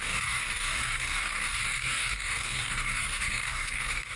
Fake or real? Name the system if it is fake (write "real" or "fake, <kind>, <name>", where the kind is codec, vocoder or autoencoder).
fake, codec, DAC